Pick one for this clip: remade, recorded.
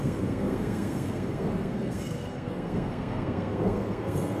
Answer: remade